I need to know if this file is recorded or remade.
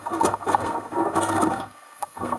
remade